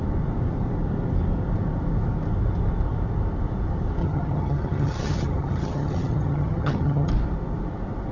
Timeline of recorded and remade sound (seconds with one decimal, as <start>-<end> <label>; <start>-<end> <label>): 0.0-4.0 recorded; 4.0-7.1 remade; 7.1-8.1 recorded